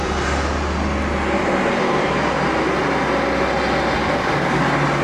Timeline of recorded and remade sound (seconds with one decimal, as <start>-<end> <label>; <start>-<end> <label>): 0.0-4.0 recorded; 4.0-4.6 remade; 4.6-5.0 recorded